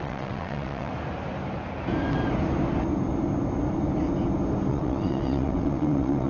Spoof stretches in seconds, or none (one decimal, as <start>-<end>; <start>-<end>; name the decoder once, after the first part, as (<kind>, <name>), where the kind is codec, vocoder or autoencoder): 0.0-0.9 (vocoder, WaveNeXt); 4.7-6.3